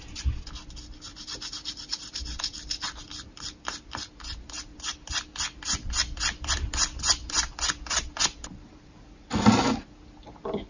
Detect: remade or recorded recorded